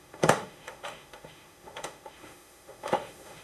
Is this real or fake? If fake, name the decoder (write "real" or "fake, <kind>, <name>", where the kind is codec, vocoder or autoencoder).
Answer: fake, autoencoder, DAC-VAE